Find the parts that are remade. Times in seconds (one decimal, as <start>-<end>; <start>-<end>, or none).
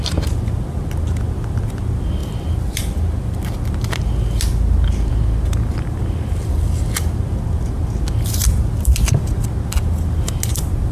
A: 8.4-9.3